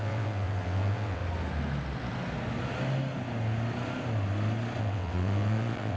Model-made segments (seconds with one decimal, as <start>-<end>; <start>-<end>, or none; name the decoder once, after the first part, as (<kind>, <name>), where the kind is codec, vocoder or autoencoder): 0.0-1.2 (vocoder, WaveNeXt); 4.8-6.0